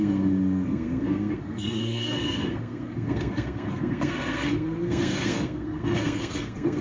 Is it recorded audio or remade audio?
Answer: remade